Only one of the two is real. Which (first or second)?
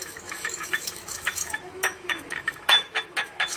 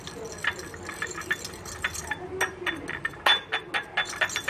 second